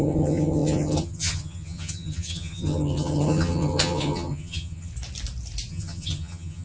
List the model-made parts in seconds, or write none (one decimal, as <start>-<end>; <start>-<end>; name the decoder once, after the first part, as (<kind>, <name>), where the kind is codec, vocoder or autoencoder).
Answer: 0.0-4.9 (vocoder, HiFi-GAN); 5.7-6.6